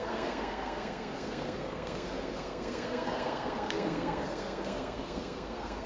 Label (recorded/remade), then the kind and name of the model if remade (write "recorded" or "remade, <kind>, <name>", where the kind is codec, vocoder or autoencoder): remade, codec, SNAC